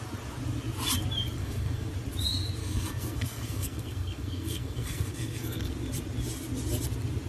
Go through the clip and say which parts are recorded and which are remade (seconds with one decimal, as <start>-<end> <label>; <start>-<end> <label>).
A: 0.0-1.4 recorded; 1.4-1.9 remade; 1.9-2.6 recorded; 2.6-5.7 remade; 5.7-7.3 recorded